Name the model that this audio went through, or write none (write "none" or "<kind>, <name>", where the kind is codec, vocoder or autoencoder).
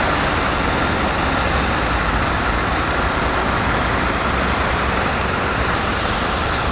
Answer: none